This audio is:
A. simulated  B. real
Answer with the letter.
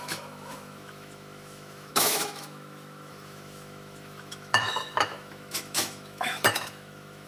A